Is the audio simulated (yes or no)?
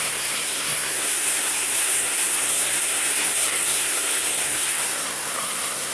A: yes